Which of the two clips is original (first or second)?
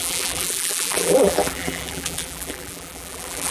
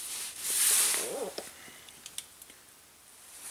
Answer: second